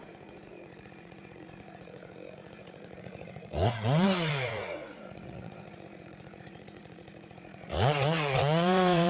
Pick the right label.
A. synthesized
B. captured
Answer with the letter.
A